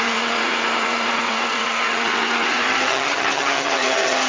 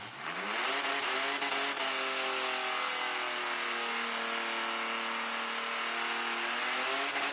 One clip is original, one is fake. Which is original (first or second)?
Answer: second